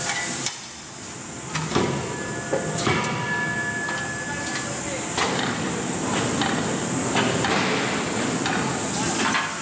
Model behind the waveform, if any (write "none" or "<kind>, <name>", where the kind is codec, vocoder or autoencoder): none